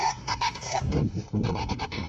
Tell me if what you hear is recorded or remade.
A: remade